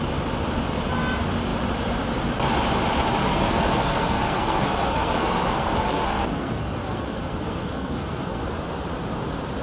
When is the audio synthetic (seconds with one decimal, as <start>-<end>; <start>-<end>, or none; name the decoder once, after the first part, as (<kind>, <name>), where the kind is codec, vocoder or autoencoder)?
3.2-8.4 (codec, SNAC)